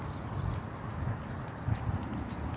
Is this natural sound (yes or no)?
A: yes